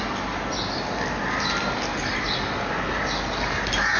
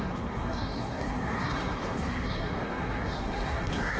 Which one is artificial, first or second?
second